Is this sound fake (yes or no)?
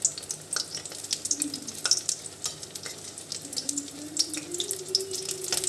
no